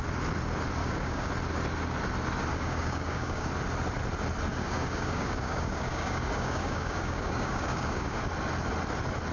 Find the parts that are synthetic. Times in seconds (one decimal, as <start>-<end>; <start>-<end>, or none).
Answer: 0.8-1.3; 2.5-3.5; 4.5-8.2